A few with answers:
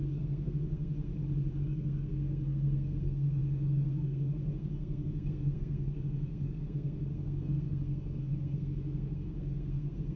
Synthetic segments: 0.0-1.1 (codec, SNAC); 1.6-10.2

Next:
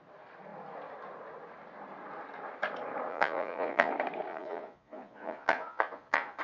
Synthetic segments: 3.1-3.9 (vocoder, Vocos); 4.3-6.4